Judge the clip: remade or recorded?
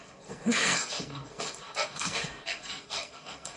remade